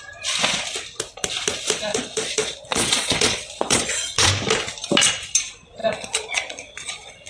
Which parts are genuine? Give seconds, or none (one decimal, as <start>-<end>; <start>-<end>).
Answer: 0.0-1.9; 4.3-5.8